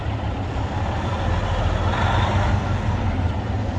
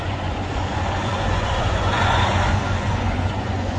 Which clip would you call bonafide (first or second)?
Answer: first